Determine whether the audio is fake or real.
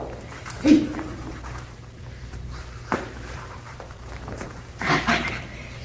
fake